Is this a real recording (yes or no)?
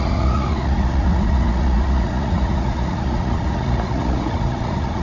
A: no